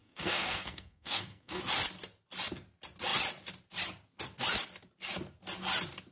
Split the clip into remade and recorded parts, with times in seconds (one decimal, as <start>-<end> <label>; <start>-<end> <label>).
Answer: 0.0-1.6 remade; 1.6-6.1 recorded